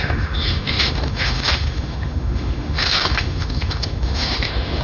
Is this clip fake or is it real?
fake